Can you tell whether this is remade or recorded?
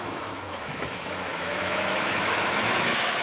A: remade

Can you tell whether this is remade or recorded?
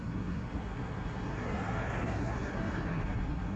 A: remade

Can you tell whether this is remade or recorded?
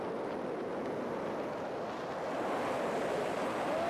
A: recorded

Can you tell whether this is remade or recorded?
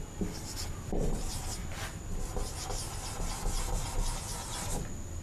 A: recorded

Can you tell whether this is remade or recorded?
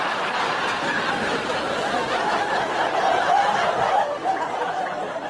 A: recorded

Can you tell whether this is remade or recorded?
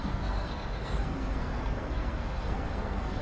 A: remade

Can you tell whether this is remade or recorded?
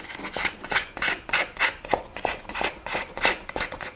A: remade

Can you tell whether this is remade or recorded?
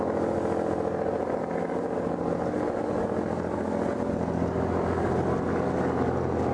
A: recorded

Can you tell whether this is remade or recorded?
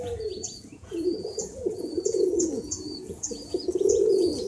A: remade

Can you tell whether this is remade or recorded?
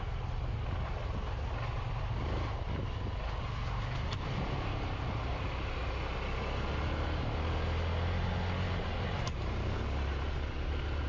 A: recorded